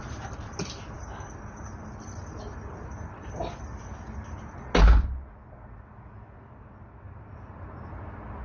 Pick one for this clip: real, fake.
real